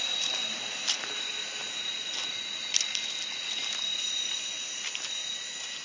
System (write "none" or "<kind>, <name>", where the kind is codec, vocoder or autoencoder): none